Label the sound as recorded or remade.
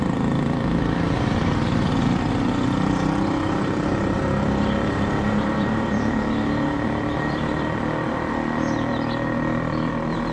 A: remade